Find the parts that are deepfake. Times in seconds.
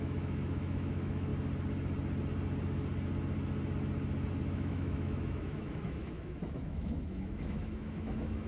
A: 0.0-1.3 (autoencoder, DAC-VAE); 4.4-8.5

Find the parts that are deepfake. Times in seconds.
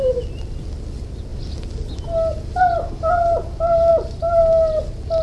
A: none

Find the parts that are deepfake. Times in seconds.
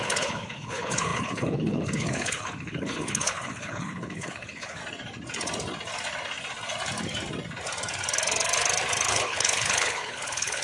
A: 0.0-4.8 (codec, HILCodec); 9.1-10.6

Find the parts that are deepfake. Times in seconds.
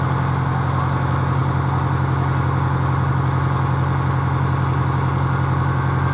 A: none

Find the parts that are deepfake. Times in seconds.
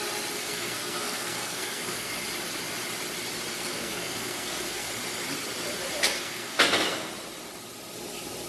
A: 0.4-2.1 (codec, SNAC); 3.5-4.9; 6.0-7.1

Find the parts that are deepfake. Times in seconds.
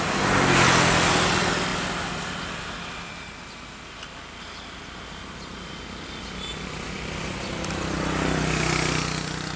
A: none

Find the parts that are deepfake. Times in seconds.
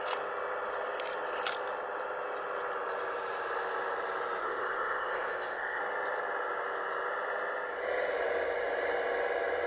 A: 4.4-5.8 (codec, ZipCodec)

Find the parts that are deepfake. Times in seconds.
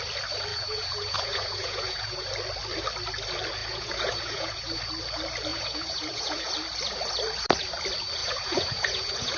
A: 0.5-2.3 (vocoder, Vocos); 3.6-4.8; 5.5-6.5; 8.2-9.4